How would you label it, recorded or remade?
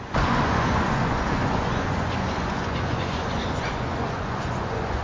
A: remade